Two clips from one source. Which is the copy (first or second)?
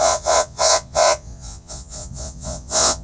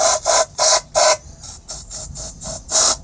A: first